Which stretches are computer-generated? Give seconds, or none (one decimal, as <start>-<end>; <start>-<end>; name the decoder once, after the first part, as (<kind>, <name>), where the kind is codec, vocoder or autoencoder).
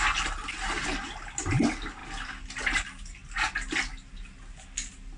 none